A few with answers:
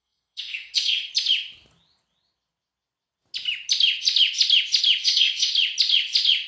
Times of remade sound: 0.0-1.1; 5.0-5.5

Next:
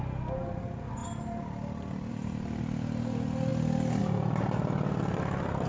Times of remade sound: none

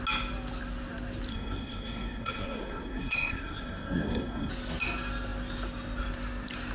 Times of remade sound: 1.3-4.5

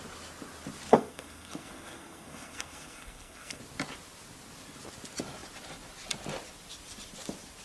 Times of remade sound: 0.9-3.6